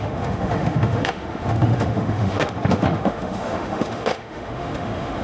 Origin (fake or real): fake